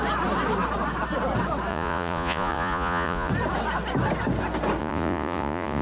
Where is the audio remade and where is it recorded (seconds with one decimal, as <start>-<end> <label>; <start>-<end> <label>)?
0.0-1.7 recorded; 1.7-3.3 remade; 3.3-4.8 recorded; 4.8-5.8 remade